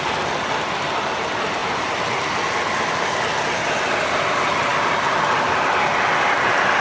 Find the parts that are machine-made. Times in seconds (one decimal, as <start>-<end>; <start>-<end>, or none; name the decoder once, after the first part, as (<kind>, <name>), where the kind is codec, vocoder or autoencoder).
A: none

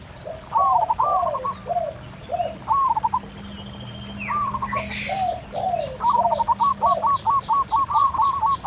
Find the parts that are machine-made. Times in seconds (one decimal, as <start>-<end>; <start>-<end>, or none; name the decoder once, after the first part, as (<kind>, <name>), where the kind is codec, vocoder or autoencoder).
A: none

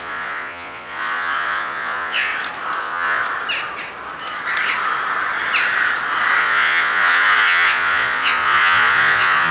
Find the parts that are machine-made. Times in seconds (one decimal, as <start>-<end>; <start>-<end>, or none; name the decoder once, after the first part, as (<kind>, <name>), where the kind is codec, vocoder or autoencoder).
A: 0.0-2.3 (vocoder, Vocos); 2.8-3.2; 6.4-9.5

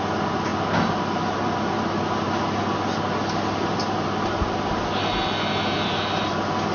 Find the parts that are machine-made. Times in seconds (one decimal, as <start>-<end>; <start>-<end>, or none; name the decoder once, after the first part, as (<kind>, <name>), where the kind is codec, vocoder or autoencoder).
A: none

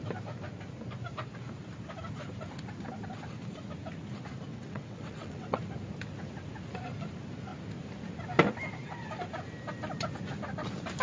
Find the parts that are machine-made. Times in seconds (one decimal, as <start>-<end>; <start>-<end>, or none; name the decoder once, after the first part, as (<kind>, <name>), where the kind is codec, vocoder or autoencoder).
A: 4.5-5.6 (vocoder, WaveNeXt)